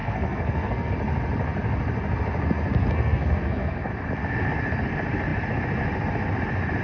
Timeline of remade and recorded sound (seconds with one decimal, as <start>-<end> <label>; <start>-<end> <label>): 0.0-0.9 remade; 0.9-2.8 recorded; 2.8-3.9 remade; 3.9-6.8 recorded